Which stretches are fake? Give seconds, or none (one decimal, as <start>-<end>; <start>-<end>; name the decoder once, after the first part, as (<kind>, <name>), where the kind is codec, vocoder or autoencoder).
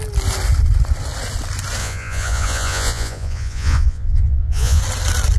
1.8-4.8 (vocoder, Vocos)